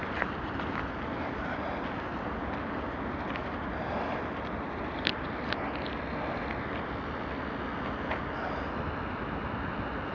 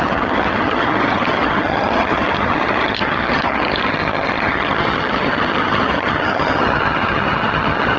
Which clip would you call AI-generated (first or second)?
second